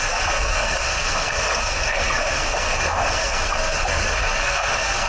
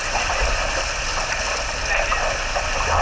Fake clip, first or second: first